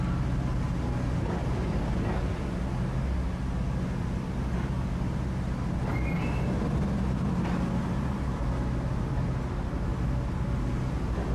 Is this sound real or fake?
real